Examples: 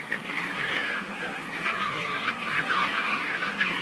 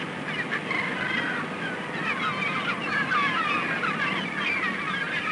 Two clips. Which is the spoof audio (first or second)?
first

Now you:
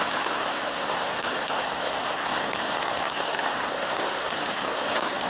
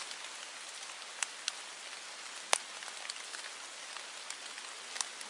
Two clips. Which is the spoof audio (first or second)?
first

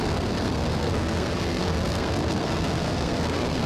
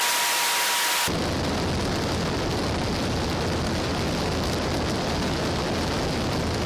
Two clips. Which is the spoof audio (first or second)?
first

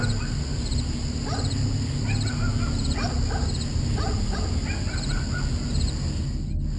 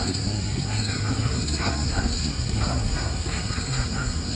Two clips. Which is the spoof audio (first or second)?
second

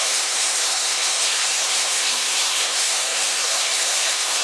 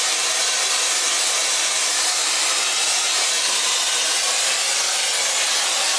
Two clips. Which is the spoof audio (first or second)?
first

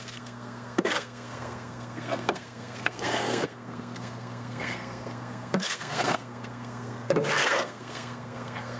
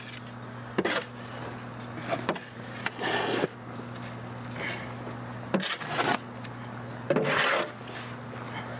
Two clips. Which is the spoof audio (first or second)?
first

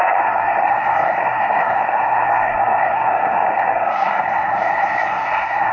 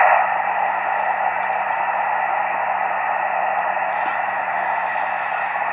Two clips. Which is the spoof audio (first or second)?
first